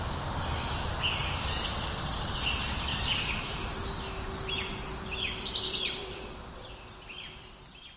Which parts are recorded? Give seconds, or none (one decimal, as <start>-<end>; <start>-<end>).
0.0-2.9; 4.1-8.0